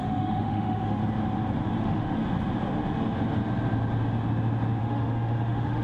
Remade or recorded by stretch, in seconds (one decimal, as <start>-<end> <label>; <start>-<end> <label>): 0.0-1.0 remade; 1.0-1.8 recorded; 1.8-2.2 remade; 2.2-4.8 recorded; 4.8-5.8 remade